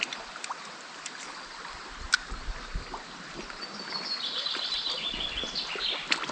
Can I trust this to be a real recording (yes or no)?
yes